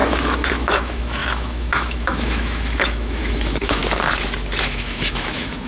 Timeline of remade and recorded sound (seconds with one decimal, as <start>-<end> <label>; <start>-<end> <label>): 0.0-3.8 remade; 3.8-4.6 recorded; 4.6-5.7 remade